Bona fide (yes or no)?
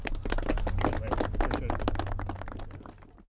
yes